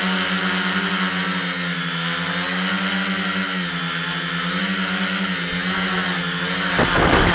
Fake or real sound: real